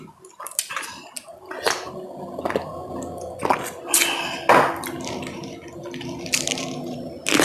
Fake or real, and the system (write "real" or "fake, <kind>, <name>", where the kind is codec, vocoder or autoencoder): real